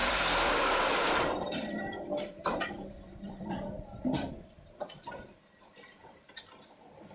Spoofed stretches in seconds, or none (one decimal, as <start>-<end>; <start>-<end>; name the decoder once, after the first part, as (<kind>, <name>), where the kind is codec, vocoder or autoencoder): 0.0-7.1 (vocoder, BigVGAN v2)